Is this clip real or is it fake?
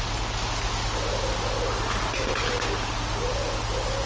real